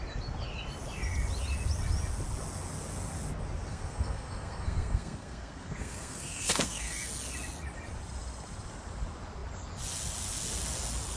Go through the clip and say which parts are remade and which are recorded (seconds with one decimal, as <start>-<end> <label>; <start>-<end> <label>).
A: 0.0-3.7 recorded; 3.7-7.1 remade; 7.1-11.2 recorded